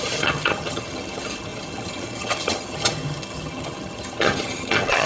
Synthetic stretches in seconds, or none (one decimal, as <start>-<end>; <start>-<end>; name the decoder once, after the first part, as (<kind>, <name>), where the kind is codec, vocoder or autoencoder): 0.0-5.1 (vocoder, HiFi-GAN)